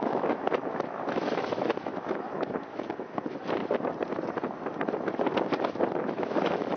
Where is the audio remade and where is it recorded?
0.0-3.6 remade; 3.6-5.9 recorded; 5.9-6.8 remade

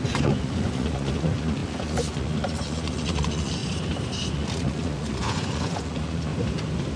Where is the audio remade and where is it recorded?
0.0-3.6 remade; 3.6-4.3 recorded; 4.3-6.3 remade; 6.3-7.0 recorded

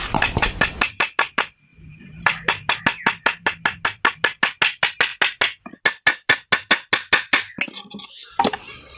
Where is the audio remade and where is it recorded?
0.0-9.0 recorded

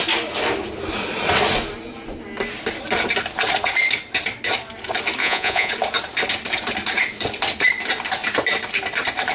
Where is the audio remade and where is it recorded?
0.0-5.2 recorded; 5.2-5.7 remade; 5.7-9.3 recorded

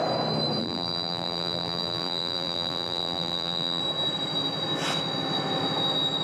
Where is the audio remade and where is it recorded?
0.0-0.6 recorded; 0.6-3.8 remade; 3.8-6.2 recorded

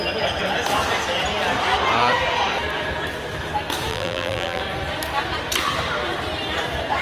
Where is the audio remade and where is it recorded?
0.0-3.9 recorded; 3.9-4.6 remade; 4.6-7.0 recorded